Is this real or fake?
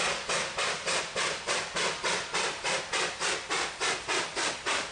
real